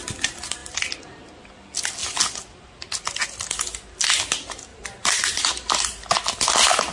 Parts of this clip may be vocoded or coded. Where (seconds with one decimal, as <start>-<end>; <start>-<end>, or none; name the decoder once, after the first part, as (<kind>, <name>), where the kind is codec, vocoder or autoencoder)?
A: 4.7-6.1 (vocoder, BigVGAN v2)